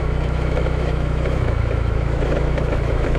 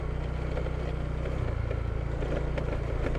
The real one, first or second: second